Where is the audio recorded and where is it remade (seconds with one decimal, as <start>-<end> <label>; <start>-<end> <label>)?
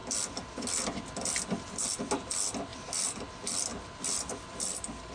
0.0-2.7 recorded; 2.7-3.3 remade; 3.3-3.7 recorded; 3.7-4.3 remade; 4.3-5.1 recorded